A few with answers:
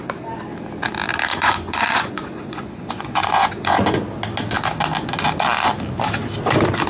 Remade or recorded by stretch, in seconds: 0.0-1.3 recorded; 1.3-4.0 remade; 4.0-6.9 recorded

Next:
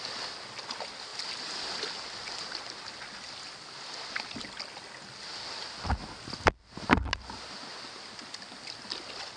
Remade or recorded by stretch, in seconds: 0.0-9.4 recorded